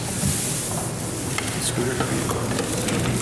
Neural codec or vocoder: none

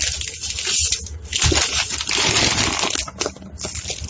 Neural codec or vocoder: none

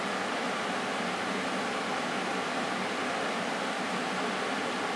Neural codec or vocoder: none